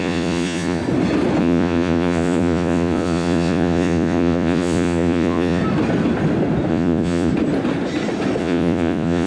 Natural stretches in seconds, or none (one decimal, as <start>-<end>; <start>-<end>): 0.8-1.4; 5.6-6.7; 7.3-8.4